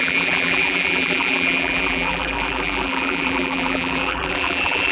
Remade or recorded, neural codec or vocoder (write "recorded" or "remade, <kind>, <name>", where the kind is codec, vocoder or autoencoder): remade, vocoder, BigVGAN v2